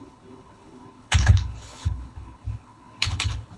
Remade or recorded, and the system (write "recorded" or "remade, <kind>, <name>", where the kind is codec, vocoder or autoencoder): remade, codec, HILCodec